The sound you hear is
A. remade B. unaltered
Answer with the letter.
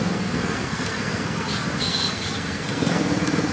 A